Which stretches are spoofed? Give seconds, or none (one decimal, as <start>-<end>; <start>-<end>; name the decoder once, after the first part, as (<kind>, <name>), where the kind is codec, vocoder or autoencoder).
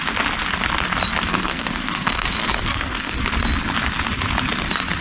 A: 1.3-3.2 (codec, SNAC)